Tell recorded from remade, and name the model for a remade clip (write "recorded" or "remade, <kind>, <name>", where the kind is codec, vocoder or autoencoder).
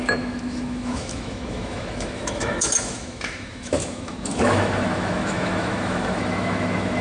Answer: remade, autoencoder, DAC-VAE